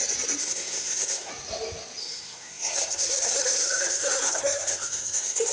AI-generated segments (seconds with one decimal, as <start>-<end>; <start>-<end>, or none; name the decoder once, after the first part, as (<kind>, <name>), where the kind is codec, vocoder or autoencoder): 0.4-1.3 (codec, SNAC); 2.0-5.5